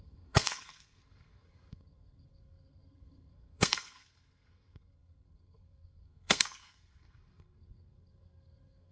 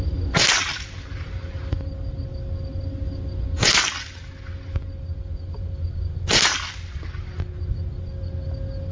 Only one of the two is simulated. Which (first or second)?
first